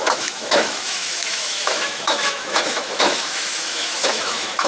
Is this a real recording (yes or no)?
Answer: no